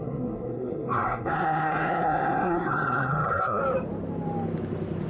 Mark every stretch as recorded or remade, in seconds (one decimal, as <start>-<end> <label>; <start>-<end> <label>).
0.0-3.6 remade; 3.6-5.1 recorded

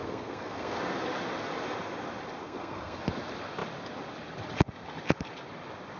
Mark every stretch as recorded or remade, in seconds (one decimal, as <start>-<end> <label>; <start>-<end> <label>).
0.0-0.8 remade; 0.8-2.4 recorded; 2.4-3.0 remade; 3.0-6.0 recorded

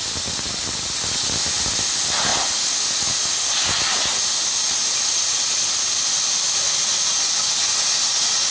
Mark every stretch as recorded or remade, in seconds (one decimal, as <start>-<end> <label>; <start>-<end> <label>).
0.0-8.5 recorded

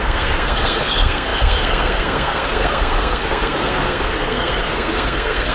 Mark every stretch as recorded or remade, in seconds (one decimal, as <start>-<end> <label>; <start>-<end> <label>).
0.0-5.5 remade

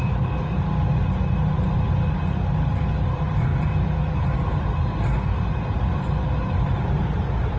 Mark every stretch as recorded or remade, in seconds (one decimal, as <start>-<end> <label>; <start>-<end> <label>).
0.0-7.6 recorded

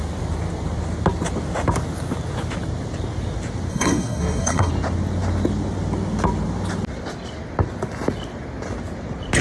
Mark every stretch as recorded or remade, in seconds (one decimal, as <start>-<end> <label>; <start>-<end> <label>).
0.0-3.7 recorded; 3.7-4.7 remade; 4.7-9.4 recorded